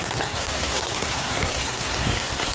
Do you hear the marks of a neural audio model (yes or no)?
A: yes